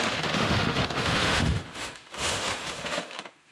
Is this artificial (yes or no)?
yes